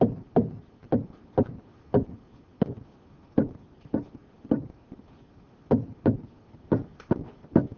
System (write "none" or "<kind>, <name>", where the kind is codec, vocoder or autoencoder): none